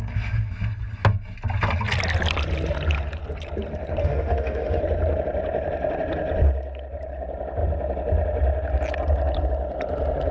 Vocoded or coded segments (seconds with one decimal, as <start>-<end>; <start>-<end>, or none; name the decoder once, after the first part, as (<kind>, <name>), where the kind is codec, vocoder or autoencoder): 4.0-4.8 (autoencoder, DAC-VAE)